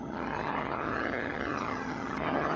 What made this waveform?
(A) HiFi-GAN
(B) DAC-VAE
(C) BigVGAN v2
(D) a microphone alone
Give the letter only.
A